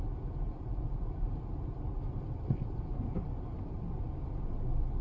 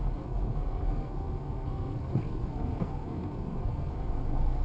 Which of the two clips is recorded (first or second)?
first